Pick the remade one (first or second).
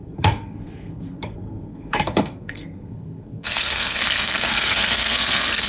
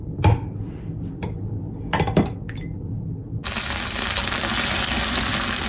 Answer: first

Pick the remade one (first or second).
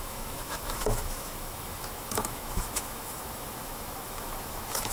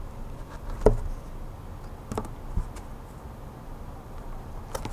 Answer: first